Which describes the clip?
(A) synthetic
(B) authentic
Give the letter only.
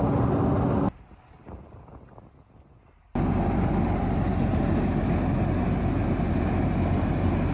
B